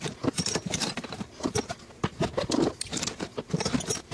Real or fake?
fake